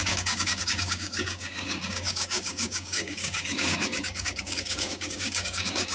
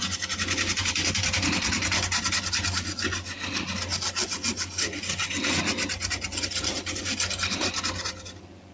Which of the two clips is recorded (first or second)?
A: second